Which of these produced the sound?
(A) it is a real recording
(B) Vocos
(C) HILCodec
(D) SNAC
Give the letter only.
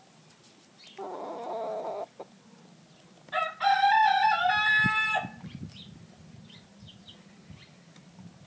A